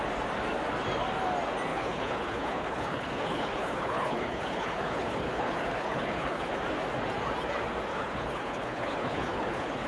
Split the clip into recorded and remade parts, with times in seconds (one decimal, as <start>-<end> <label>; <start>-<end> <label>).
0.0-1.7 recorded; 1.7-6.5 remade; 6.5-7.9 recorded; 7.9-9.9 remade